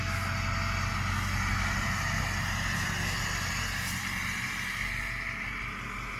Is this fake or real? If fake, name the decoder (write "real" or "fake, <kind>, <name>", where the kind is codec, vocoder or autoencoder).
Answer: real